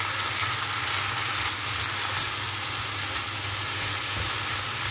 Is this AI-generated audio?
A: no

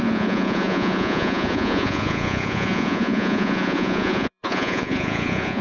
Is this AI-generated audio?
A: yes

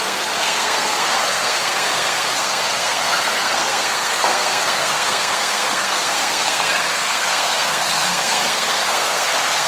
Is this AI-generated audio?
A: yes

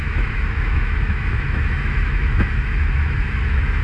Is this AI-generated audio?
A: yes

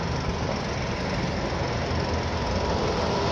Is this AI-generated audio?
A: no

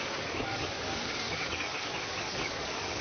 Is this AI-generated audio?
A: yes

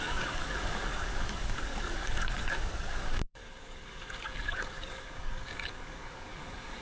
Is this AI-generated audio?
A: yes